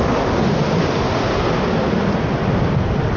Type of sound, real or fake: real